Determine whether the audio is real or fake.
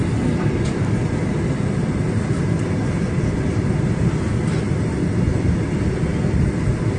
real